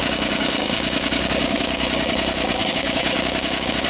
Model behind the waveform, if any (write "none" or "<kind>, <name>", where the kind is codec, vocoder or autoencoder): codec, DAC